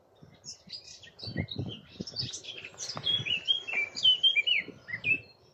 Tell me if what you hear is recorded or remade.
recorded